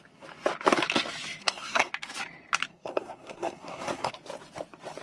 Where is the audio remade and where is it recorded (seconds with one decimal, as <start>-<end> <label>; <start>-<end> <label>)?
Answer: 0.0-1.4 recorded; 1.4-1.9 remade; 1.9-2.7 recorded; 2.7-4.1 remade; 4.1-5.0 recorded

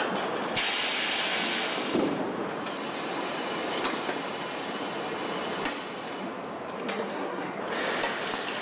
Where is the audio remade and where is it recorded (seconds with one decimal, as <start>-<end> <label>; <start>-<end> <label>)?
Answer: 0.0-6.9 recorded; 6.9-7.6 remade; 7.6-8.6 recorded